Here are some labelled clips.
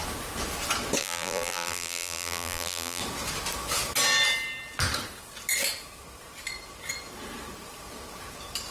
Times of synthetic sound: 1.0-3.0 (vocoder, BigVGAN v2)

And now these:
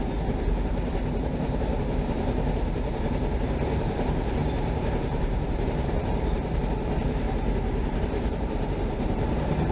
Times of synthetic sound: 0.0-9.7 (vocoder, BigVGAN v2)

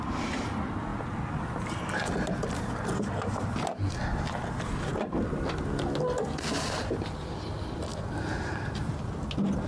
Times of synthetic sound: 7.9-8.8 (vocoder, BigVGAN v2)

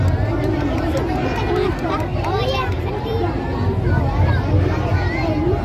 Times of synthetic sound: 0.0-5.6 (vocoder, BigVGAN v2)

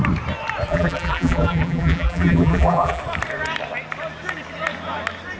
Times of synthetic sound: 0.7-3.0 (vocoder, BigVGAN v2)

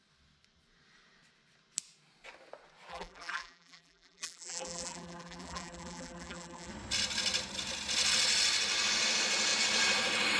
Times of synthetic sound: 2.9-6.7 (vocoder, BigVGAN v2)